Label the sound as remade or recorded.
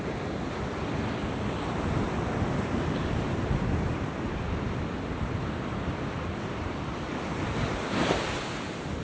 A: recorded